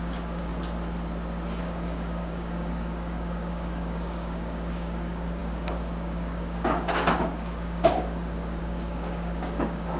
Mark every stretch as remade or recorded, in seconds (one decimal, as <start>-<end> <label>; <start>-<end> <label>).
0.0-0.5 remade; 0.5-1.6 recorded; 1.6-10.0 remade